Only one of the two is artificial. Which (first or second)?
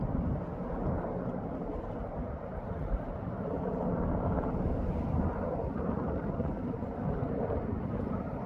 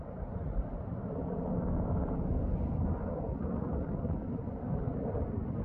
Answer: first